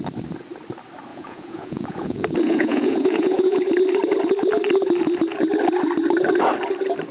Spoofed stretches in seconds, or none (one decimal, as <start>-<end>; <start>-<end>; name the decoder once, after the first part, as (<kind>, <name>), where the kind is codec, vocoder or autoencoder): 1.1-3.6 (vocoder, Vocos)